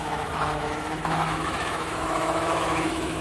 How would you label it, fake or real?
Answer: fake